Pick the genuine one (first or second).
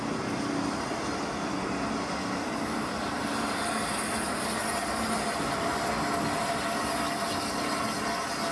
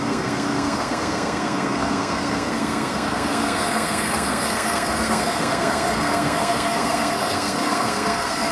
first